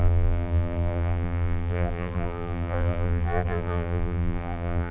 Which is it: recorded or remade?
remade